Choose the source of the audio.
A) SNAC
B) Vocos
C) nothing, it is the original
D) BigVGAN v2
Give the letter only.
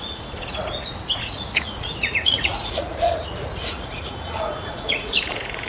B